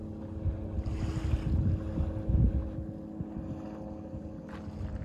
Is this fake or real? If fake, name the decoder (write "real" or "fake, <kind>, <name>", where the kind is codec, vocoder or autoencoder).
real